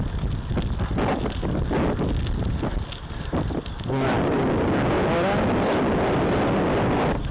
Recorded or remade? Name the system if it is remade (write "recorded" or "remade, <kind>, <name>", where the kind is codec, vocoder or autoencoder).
recorded